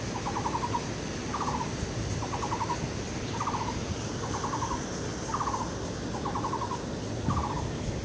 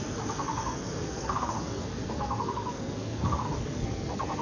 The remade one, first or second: second